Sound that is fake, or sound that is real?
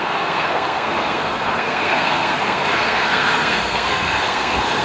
fake